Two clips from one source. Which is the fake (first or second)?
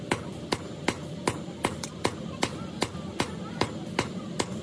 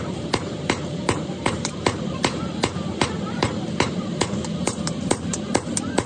second